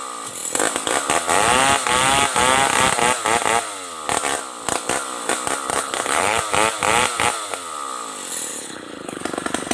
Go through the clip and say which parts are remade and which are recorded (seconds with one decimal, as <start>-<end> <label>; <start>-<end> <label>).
0.0-5.7 recorded; 5.7-6.4 remade; 6.4-8.5 recorded; 8.5-9.2 remade; 9.2-9.7 recorded